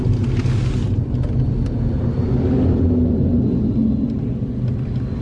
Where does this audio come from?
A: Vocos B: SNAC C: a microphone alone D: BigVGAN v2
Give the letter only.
C